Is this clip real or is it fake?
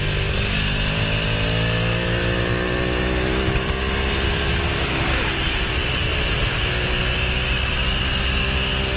real